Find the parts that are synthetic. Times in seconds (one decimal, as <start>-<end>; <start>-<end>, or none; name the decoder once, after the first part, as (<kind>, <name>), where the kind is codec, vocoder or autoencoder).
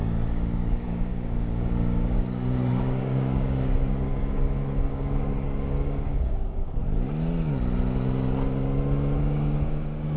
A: 0.0-6.8 (codec, DAC); 9.2-10.2